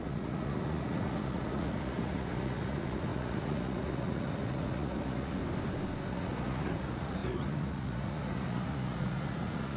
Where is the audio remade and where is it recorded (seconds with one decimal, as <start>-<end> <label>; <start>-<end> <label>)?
0.0-5.4 remade; 5.4-6.1 recorded; 6.1-9.8 remade